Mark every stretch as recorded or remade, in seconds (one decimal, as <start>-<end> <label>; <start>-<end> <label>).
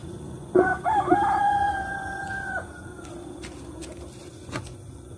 0.0-0.7 remade; 0.7-1.4 recorded; 1.4-2.9 remade; 2.9-4.3 recorded; 4.3-5.2 remade